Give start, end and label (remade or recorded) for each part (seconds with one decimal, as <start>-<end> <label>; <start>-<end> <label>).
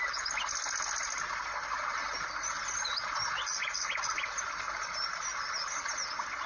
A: 0.0-5.3 recorded; 5.3-6.1 remade; 6.1-6.5 recorded